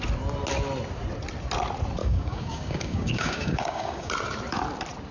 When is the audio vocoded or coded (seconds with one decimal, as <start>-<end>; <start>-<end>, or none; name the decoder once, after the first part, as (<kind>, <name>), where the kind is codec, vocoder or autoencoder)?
2.0-4.1 (codec, DAC)